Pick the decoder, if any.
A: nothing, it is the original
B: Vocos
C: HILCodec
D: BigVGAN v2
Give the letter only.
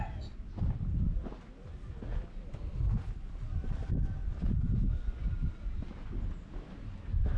A